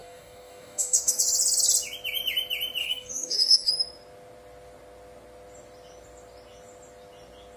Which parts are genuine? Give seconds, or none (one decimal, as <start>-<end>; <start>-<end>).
1.2-2.8; 3.7-7.6